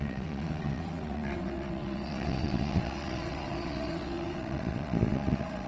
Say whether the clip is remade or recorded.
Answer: remade